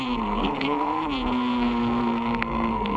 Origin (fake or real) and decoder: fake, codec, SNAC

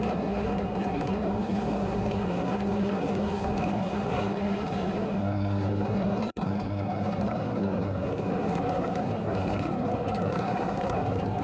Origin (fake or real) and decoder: fake, codec, SNAC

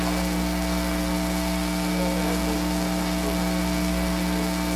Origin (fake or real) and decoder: fake, codec, SNAC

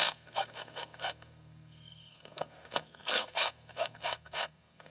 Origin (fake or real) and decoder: fake, codec, SNAC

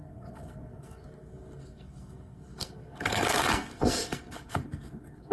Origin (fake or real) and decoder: fake, codec, SNAC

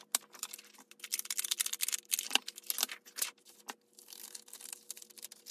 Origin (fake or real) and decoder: real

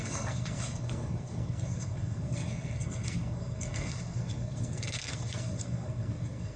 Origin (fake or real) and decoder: fake, codec, SNAC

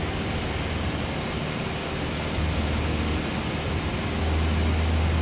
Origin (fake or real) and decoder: real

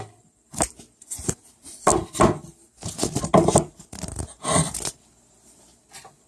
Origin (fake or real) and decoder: real